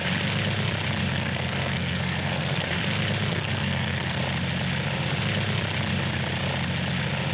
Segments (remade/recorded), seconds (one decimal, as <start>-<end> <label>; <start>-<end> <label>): 0.0-1.1 recorded; 1.1-2.8 remade; 2.8-3.3 recorded; 3.3-4.2 remade; 4.2-7.3 recorded